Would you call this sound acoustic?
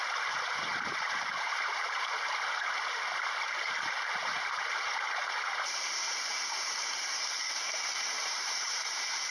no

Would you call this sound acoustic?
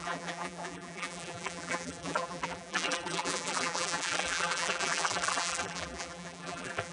no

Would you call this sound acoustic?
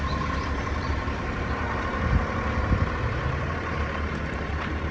no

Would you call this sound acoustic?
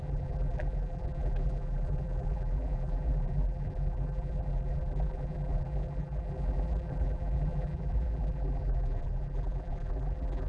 no